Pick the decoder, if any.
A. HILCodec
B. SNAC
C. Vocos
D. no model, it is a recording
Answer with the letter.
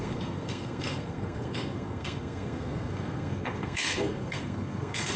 B